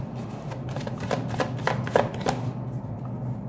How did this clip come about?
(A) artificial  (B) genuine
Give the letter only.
B